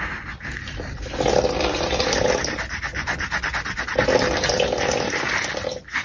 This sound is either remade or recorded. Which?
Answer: recorded